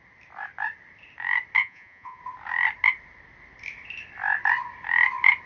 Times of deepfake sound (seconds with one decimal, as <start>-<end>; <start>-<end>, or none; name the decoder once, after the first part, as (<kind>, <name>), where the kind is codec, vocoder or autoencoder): 1.6-2.2 (vocoder, Vocos)